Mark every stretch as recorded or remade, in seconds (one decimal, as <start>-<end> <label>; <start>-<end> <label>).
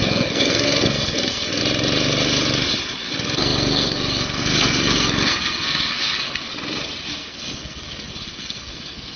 0.0-1.6 remade; 1.6-3.0 recorded; 3.0-6.5 remade; 6.5-7.1 recorded; 7.1-9.2 remade